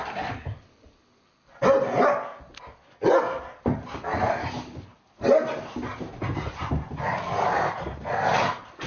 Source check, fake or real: real